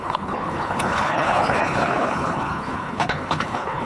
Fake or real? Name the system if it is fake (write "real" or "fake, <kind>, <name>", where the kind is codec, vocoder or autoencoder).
fake, codec, HILCodec